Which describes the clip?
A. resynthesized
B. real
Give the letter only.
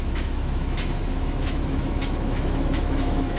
A